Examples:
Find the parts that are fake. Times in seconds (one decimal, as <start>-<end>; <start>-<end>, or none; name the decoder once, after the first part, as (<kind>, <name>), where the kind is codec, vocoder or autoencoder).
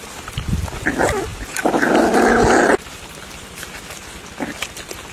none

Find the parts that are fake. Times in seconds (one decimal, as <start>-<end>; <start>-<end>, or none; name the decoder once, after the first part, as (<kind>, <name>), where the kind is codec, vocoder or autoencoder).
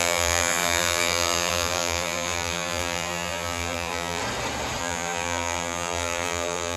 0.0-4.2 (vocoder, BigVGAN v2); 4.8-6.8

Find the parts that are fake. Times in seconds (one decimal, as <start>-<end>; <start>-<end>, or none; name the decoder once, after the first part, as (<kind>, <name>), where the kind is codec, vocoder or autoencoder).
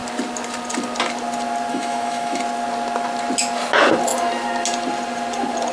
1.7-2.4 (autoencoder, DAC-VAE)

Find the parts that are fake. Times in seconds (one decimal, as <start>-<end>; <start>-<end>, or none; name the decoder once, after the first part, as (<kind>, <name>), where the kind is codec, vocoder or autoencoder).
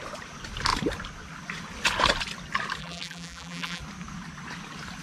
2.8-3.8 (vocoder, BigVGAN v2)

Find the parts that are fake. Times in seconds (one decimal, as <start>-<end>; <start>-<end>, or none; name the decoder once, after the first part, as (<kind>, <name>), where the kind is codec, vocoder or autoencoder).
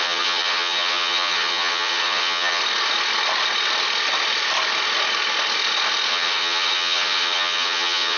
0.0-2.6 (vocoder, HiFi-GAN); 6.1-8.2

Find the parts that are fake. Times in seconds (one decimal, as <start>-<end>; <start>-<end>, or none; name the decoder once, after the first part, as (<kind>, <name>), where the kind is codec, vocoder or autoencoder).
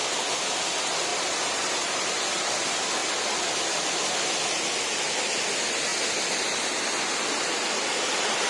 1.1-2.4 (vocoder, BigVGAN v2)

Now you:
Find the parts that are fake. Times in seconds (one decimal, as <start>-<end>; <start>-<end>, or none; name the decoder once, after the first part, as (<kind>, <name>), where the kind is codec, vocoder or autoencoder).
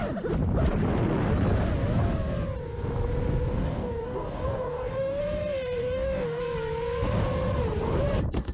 3.5-5.2 (codec, DAC); 5.8-6.4